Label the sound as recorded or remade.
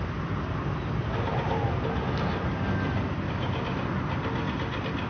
recorded